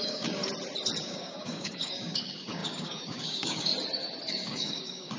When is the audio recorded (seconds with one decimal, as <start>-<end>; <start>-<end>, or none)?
0.4-1.0; 3.7-4.3